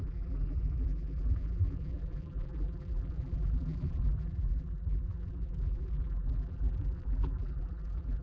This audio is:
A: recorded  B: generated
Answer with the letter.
B